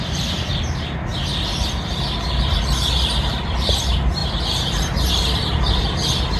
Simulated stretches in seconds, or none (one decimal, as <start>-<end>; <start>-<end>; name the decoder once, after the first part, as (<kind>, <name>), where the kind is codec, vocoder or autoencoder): 0.0-1.1 (vocoder, BigVGAN v2); 3.3-4.2; 5.1-6.4